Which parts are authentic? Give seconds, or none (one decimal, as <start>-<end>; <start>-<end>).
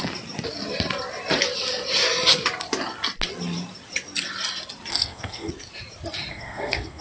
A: 0.0-4.9; 5.5-6.3